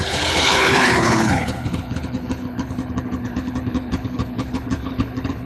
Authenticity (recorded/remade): remade